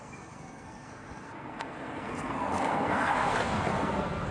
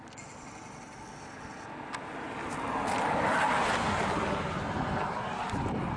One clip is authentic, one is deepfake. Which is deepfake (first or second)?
first